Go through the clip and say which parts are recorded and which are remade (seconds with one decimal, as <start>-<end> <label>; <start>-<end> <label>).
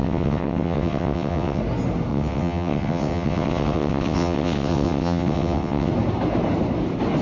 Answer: 0.0-1.6 remade; 1.6-2.1 recorded; 2.1-5.9 remade; 5.9-7.2 recorded